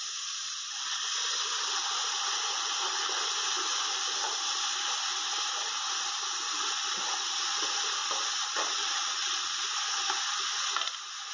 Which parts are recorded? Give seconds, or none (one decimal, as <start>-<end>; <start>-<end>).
0.0-8.0; 9.4-11.3